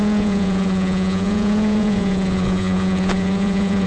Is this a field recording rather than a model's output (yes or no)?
no